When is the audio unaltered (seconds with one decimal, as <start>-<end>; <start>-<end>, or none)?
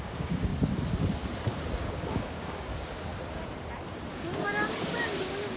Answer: 0.5-1.8; 3.1-4.1